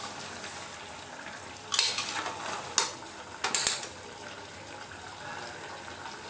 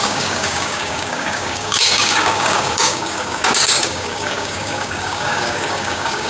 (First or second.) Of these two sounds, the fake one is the second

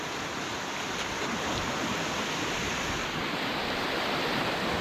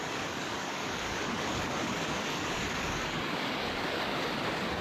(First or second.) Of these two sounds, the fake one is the second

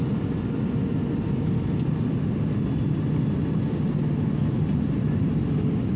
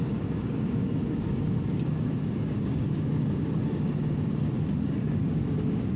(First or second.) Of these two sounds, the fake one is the second